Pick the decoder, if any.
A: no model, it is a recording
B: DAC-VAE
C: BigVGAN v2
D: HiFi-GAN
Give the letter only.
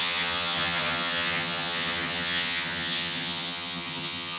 D